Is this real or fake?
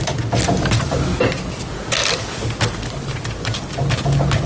real